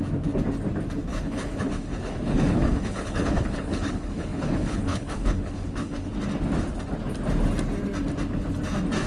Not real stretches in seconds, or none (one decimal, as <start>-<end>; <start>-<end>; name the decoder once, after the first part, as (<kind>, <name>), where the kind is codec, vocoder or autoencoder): 1.1-6.1 (codec, HILCodec)